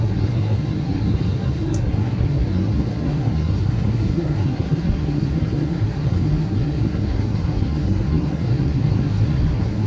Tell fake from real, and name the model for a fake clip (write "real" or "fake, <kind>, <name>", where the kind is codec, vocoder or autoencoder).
fake, codec, SNAC